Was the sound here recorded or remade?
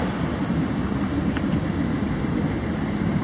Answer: recorded